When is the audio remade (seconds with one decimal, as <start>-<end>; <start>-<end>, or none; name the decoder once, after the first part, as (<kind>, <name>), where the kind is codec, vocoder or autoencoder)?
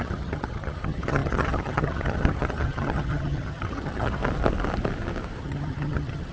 0.0-4.2 (vocoder, HiFi-GAN); 5.4-6.3